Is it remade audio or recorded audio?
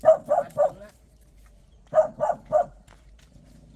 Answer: remade